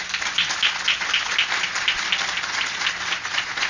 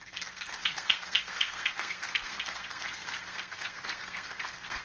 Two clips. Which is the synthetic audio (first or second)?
second